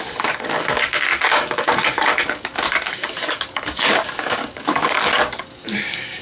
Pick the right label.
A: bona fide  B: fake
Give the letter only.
B